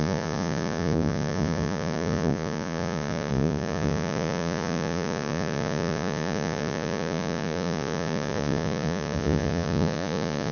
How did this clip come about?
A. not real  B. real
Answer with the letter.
A